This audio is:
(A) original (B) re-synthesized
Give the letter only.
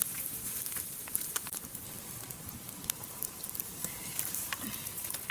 B